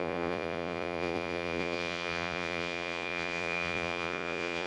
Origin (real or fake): fake